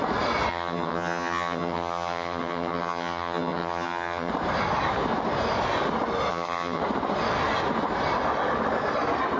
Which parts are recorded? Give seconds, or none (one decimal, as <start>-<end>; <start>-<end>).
0.0-0.5; 4.3-6.3; 6.8-9.4